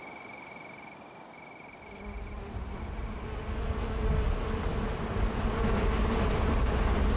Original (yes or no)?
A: yes